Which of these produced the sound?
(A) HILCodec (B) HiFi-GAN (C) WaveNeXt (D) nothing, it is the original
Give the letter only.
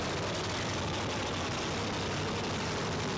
D